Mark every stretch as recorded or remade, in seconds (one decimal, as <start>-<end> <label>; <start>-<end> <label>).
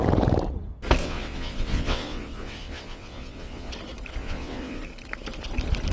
0.0-1.0 recorded; 1.0-3.7 remade; 3.7-4.2 recorded; 4.2-4.8 remade; 4.8-5.9 recorded